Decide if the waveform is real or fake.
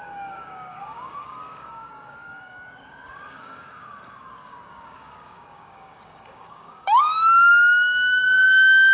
fake